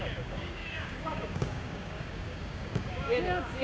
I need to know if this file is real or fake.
fake